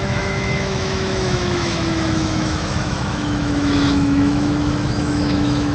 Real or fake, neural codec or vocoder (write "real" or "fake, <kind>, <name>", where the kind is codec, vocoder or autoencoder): fake, autoencoder, DAC-VAE